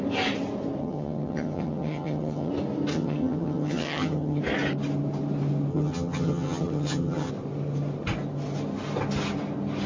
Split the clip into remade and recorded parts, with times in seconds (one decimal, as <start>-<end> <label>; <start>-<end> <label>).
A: 0.0-0.8 recorded; 0.8-2.5 remade; 2.5-2.9 recorded; 2.9-4.4 remade; 4.4-5.7 recorded; 5.7-7.3 remade; 7.3-9.9 recorded